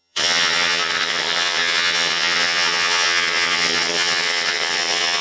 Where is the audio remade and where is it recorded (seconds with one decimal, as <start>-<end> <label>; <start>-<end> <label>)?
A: 0.0-5.2 remade

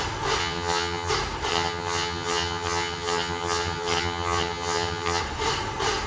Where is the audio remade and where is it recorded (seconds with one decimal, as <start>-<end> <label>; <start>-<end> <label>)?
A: 0.0-0.4 recorded; 0.4-1.1 remade; 1.1-1.5 recorded; 1.5-5.2 remade; 5.2-6.1 recorded

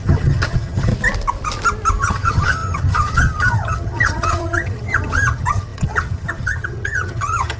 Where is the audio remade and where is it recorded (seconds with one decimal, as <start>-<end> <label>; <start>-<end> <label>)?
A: 0.0-0.9 remade; 0.9-2.0 recorded; 2.0-7.6 remade

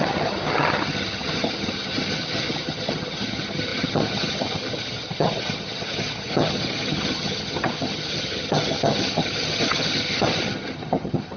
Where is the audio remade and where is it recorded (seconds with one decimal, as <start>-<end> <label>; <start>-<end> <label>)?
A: 0.0-11.4 remade

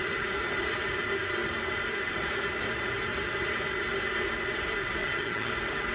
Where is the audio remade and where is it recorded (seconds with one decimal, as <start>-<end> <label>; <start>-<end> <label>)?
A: 0.0-5.0 recorded; 5.0-5.5 remade; 5.5-5.9 recorded

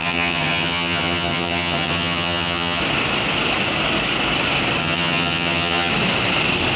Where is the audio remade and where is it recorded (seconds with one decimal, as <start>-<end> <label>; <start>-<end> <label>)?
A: 0.0-2.8 remade; 2.8-4.8 recorded; 4.8-5.9 remade; 5.9-6.8 recorded

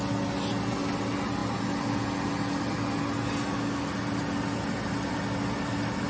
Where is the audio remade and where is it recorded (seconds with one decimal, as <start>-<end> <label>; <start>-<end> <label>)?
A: 0.0-6.1 recorded

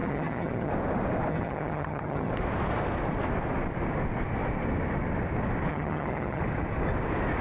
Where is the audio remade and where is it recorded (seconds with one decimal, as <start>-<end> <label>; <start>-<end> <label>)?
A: 0.0-0.7 remade; 0.7-1.3 recorded; 1.3-2.3 remade; 2.3-5.7 recorded; 5.7-6.4 remade; 6.4-7.4 recorded